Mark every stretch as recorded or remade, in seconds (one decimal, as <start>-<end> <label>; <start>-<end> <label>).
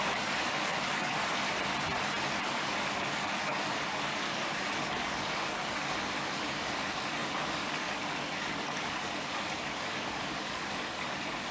0.0-1.2 remade; 1.2-2.4 recorded; 2.4-11.5 remade